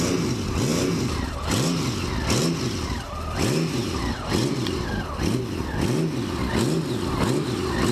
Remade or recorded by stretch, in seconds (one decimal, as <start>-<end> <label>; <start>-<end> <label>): 0.0-7.9 recorded